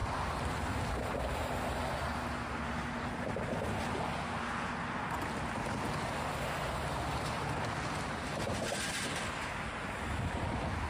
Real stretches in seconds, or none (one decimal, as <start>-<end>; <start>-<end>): 0.0-10.9